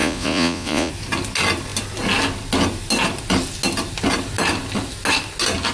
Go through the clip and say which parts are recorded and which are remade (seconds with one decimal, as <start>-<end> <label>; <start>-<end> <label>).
0.0-0.9 remade; 0.9-5.7 recorded

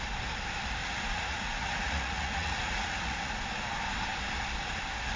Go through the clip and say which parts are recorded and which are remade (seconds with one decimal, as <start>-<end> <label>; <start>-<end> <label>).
0.0-0.8 recorded; 0.8-3.3 remade; 3.3-5.2 recorded

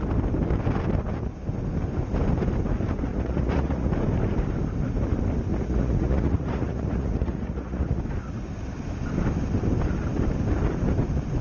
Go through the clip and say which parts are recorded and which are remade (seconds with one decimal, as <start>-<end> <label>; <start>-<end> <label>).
0.0-3.1 recorded; 3.1-3.9 remade; 3.9-5.5 recorded; 5.5-8.0 remade; 8.0-11.4 recorded